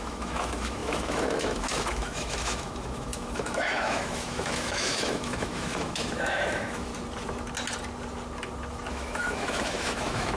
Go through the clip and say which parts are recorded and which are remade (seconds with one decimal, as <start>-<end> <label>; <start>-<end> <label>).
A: 0.0-6.9 remade; 6.9-8.9 recorded; 8.9-10.4 remade